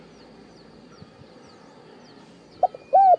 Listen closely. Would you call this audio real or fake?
real